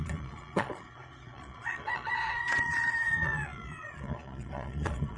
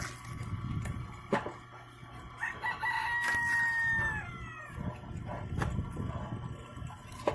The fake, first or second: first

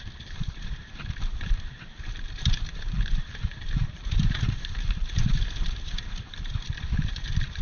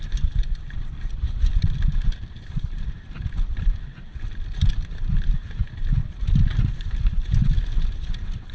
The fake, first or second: first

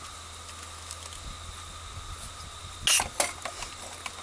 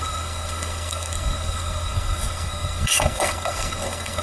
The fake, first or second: second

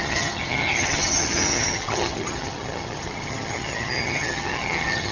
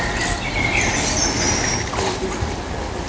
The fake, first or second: first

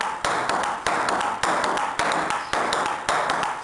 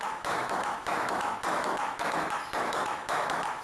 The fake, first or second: second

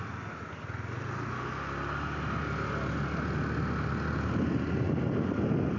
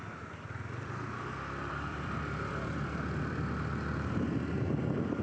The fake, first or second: second